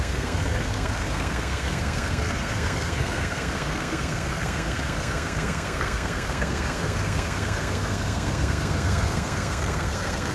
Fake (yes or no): yes